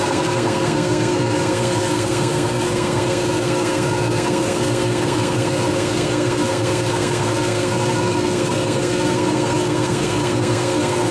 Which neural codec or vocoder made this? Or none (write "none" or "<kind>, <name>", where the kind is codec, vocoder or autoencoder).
codec, SNAC